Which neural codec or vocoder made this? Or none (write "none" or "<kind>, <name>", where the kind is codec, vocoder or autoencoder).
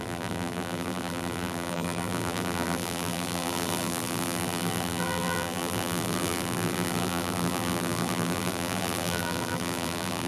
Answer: vocoder, BigVGAN v2